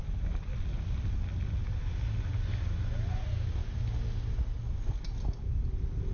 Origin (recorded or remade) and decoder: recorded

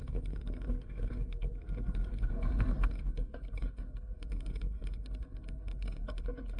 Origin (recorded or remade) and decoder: remade, codec, SNAC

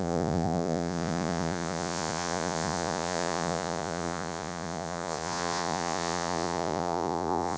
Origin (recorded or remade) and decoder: remade, vocoder, Vocos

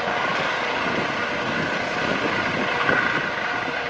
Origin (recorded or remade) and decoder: recorded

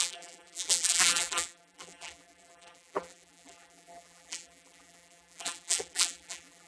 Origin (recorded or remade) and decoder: remade, vocoder, BigVGAN v2